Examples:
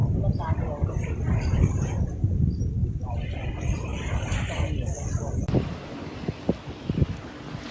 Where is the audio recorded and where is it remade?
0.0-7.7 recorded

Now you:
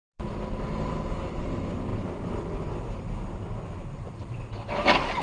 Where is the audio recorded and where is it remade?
0.0-5.2 recorded

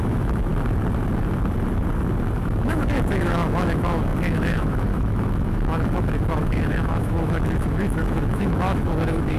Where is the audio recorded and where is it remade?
0.0-0.5 remade; 0.5-2.4 recorded; 2.4-9.4 remade

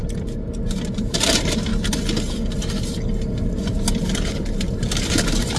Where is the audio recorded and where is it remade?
0.0-0.6 recorded; 0.6-1.7 remade; 1.7-3.5 recorded; 3.5-5.6 remade

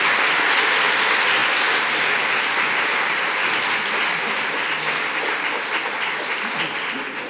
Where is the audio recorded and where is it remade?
0.0-7.3 recorded

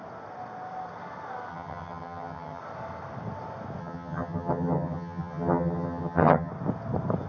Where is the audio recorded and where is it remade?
0.0-1.5 recorded; 1.5-2.6 remade; 2.6-3.8 recorded; 3.8-6.5 remade; 6.5-7.3 recorded